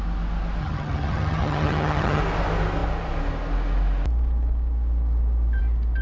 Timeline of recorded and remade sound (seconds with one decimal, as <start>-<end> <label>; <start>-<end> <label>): 0.0-0.6 recorded; 0.6-2.2 remade; 2.2-6.0 recorded